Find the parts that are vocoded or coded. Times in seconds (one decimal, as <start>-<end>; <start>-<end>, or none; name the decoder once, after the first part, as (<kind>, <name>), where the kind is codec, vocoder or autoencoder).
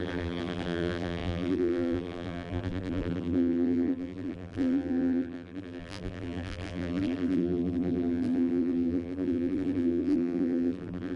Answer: 0.0-11.2 (vocoder, BigVGAN v2)